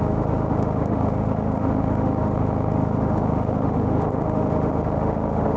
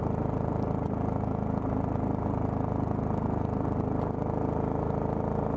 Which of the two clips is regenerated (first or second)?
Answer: first